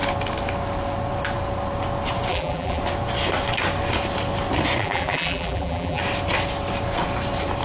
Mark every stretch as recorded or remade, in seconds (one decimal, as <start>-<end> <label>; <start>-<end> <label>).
0.0-2.3 recorded; 2.3-2.8 remade; 2.8-4.8 recorded; 4.8-6.0 remade; 6.0-7.6 recorded